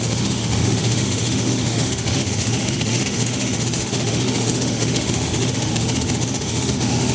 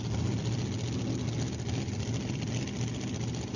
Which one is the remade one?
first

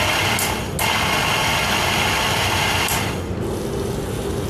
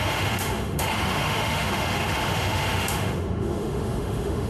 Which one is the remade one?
second